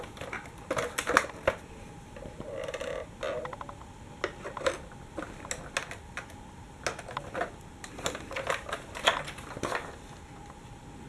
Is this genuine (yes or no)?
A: yes